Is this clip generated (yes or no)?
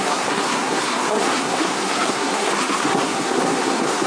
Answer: yes